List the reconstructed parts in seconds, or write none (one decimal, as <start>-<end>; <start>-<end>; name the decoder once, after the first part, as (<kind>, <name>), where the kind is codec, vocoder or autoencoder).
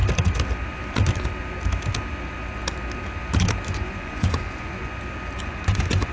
3.7-4.9 (vocoder, Vocos); 5.4-6.1